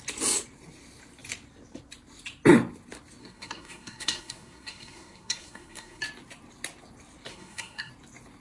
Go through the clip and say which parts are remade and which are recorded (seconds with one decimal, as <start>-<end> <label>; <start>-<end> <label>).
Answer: 0.0-3.2 recorded; 3.2-6.0 remade; 6.0-7.3 recorded; 7.3-7.9 remade; 7.9-8.4 recorded